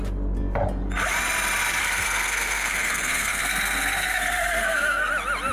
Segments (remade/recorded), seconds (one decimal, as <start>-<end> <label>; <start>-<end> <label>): 0.0-1.8 recorded; 1.8-5.1 remade; 5.1-5.5 recorded